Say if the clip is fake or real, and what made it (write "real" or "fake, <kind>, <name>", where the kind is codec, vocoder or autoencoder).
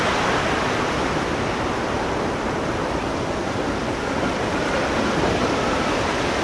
real